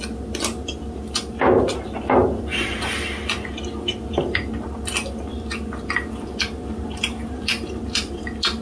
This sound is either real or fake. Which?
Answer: real